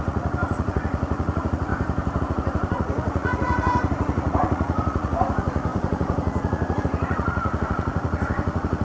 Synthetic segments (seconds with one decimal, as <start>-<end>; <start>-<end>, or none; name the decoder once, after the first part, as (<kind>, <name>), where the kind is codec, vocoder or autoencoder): 0.0-1.7 (vocoder, Vocos); 2.2-8.8